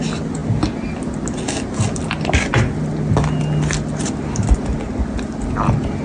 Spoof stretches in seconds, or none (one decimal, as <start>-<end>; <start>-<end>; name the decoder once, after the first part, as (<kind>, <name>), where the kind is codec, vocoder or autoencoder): none